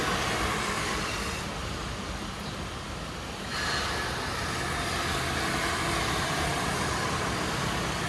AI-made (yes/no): no